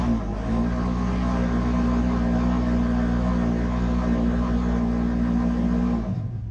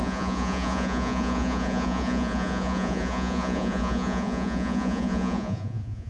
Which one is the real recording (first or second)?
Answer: first